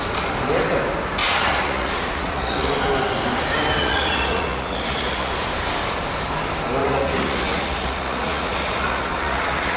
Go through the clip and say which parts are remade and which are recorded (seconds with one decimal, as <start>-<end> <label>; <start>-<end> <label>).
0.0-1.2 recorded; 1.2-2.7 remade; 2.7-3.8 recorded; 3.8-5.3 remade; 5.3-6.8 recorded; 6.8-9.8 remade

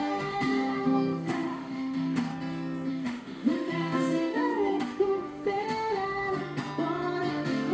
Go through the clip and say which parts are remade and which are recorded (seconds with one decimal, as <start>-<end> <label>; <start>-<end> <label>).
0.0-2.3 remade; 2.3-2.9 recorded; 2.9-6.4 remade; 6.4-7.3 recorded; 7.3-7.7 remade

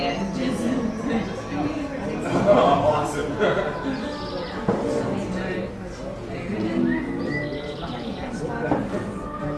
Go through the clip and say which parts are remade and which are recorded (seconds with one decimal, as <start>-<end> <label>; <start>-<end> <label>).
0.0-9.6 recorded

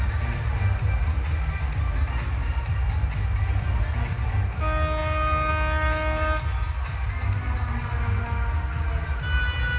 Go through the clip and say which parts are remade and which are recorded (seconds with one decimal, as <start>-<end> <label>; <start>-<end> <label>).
0.0-9.8 recorded

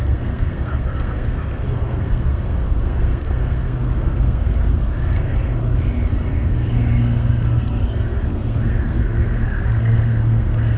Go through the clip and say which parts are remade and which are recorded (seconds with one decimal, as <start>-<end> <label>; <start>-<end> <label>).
0.0-5.6 remade; 5.6-6.3 recorded; 6.3-10.8 remade

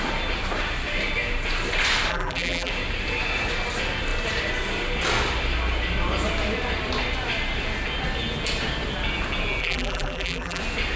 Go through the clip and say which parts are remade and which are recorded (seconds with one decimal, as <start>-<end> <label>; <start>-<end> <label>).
0.0-2.1 recorded; 2.1-2.7 remade; 2.7-9.6 recorded; 9.6-10.6 remade; 10.6-11.0 recorded

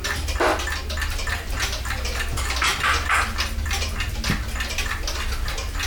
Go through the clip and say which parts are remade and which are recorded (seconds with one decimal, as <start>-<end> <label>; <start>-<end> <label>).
0.0-5.9 recorded